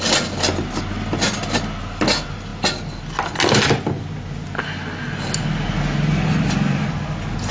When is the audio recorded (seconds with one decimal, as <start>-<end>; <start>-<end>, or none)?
0.0-7.5

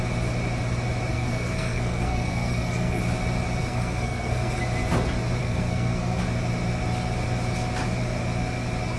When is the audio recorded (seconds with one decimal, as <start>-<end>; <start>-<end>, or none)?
0.0-1.1; 3.0-3.6; 4.6-5.4; 6.2-9.0

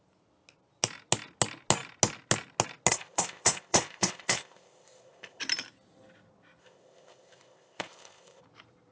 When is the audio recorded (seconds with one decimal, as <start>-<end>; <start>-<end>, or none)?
0.0-2.9; 5.4-6.6; 8.4-8.9

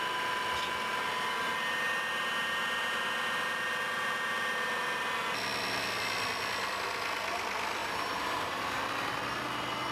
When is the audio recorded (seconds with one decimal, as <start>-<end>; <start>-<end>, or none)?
0.0-7.8; 8.8-9.9